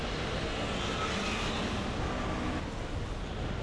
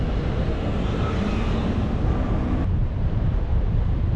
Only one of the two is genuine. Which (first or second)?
first